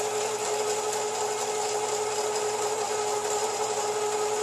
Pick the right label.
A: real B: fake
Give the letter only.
A